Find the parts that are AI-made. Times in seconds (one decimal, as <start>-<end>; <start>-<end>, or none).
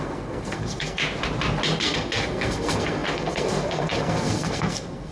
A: 0.0-1.0; 1.8-5.1